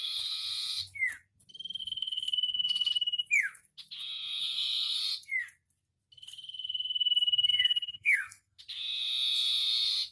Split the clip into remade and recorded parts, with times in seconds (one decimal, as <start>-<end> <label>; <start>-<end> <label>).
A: 0.0-1.8 recorded; 1.8-2.9 remade; 2.9-4.4 recorded; 4.4-5.0 remade; 5.0-7.5 recorded; 7.5-8.6 remade; 8.6-10.1 recorded

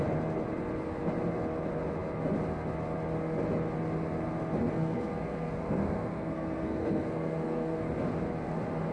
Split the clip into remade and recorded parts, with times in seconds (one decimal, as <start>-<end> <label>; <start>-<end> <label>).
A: 0.0-4.7 recorded; 4.7-7.8 remade; 7.8-8.9 recorded

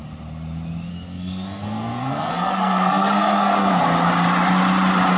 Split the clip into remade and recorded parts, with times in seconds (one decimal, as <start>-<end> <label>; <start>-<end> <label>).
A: 0.0-0.9 recorded; 0.9-3.7 remade; 3.7-5.2 recorded

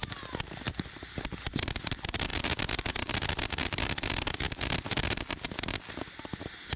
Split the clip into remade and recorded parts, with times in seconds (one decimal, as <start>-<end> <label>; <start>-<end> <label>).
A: 0.0-6.8 recorded

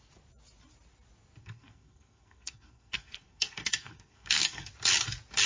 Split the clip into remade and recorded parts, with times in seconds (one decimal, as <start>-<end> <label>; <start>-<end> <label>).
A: 0.0-1.4 recorded; 1.4-4.7 remade; 4.7-5.5 recorded

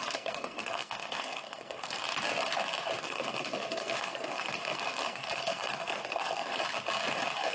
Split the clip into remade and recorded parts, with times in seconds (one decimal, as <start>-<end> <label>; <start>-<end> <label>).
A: 0.0-2.0 remade; 2.0-3.0 recorded; 3.0-6.5 remade; 6.5-7.5 recorded